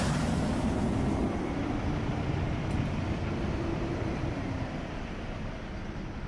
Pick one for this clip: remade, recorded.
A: remade